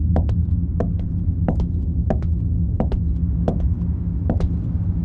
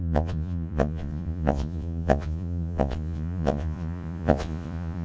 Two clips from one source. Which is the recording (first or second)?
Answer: first